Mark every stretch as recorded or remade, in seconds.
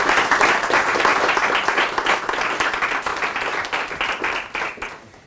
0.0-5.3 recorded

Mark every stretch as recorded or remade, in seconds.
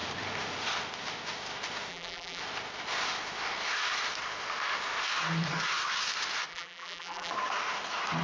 0.0-1.9 recorded; 1.9-2.4 remade; 2.4-6.5 recorded; 6.5-7.3 remade; 7.3-8.2 recorded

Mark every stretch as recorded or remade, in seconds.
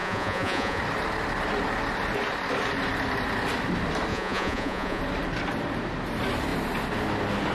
0.0-0.8 remade; 0.8-4.1 recorded; 4.1-5.0 remade; 5.0-7.5 recorded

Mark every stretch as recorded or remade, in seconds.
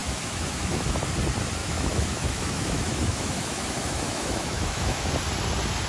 0.0-1.0 remade; 1.0-1.6 recorded; 1.6-5.1 remade; 5.1-5.9 recorded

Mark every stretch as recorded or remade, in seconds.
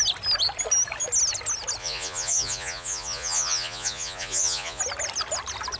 0.0-1.8 recorded; 1.8-4.8 remade; 4.8-5.8 recorded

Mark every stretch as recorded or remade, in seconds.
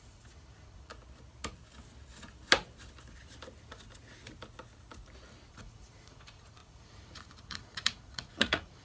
0.0-0.9 remade; 0.9-5.5 recorded; 5.5-8.8 remade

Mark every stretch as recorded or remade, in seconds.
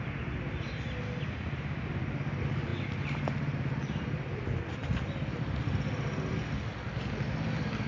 0.0-7.9 recorded